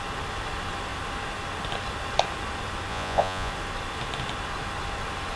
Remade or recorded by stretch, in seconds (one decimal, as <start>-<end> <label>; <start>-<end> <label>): 0.0-2.9 recorded; 2.9-3.5 remade; 3.5-5.4 recorded